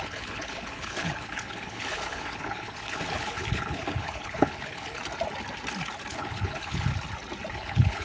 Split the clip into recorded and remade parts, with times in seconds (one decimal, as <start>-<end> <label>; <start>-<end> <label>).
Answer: 0.0-5.0 remade; 5.0-6.1 recorded; 6.1-6.9 remade; 6.9-7.5 recorded; 7.5-8.0 remade